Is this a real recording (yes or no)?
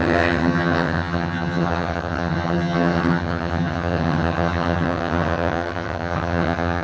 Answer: no